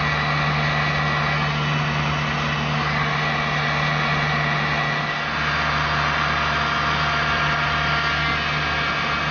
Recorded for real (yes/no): yes